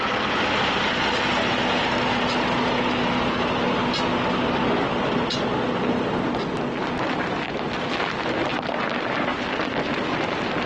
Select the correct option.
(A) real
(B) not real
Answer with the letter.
A